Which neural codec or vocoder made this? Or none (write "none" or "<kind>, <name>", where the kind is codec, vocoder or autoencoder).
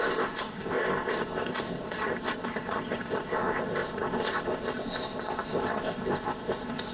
codec, ZipCodec